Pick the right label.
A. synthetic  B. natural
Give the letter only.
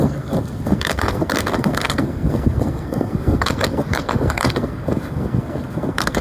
A